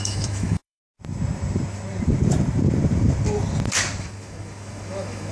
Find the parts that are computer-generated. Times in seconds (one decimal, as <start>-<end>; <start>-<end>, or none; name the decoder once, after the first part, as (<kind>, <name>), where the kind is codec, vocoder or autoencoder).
0.0-0.8 (autoencoder, DAC-VAE); 4.0-5.3